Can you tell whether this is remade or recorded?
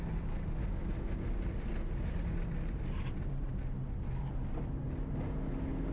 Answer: recorded